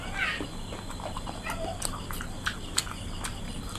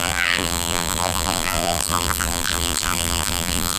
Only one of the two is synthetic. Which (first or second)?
second